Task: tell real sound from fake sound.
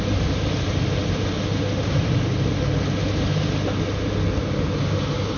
real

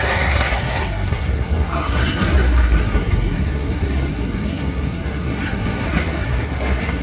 fake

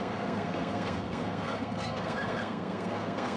fake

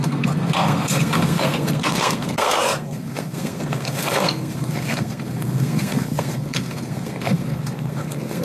fake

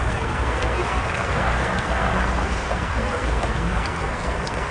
fake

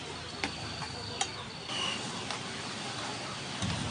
real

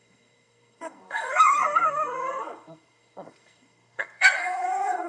fake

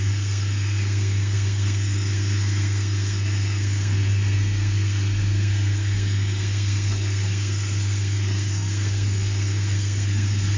fake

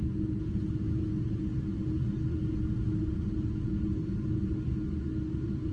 real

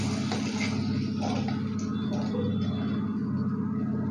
real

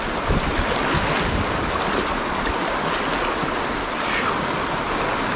real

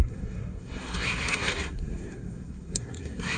fake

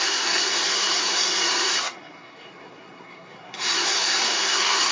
fake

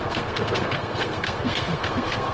fake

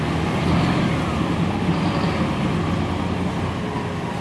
real